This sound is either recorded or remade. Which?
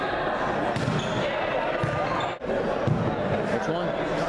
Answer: recorded